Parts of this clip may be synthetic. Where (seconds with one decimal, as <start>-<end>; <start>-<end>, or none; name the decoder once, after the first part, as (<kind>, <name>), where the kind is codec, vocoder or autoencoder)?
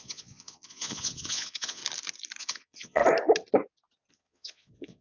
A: 0.0-1.8 (vocoder, Vocos); 2.4-3.0; 4.1-5.0